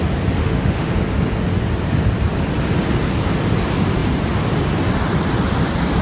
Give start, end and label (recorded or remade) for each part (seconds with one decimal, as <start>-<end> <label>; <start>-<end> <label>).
0.0-0.4 recorded; 0.4-0.9 remade; 0.9-6.0 recorded

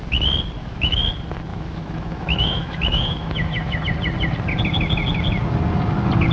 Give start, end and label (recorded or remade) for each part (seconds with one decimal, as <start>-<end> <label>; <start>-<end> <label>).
0.0-0.6 recorded; 0.6-1.1 remade; 1.1-1.5 recorded; 1.5-3.8 remade; 3.8-6.3 recorded

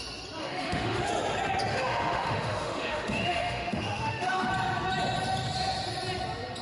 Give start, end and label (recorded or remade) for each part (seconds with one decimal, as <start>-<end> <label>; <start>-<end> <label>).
0.0-0.4 recorded; 0.4-1.1 remade; 1.1-1.7 recorded; 1.7-4.5 remade; 4.5-6.6 recorded

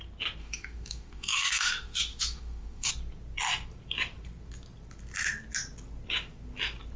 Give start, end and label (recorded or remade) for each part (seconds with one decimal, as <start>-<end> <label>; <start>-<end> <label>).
0.0-0.4 recorded; 0.4-2.9 remade; 2.9-7.0 recorded

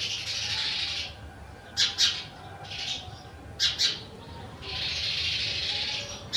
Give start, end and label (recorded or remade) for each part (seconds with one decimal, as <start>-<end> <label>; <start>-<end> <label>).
0.0-6.4 recorded

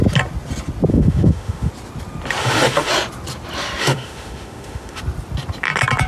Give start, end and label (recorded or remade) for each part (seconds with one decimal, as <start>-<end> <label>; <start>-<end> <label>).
0.0-0.9 recorded; 0.9-1.7 remade; 1.7-2.4 recorded; 2.4-2.9 remade; 2.9-3.8 recorded; 3.8-5.0 remade; 5.0-6.1 recorded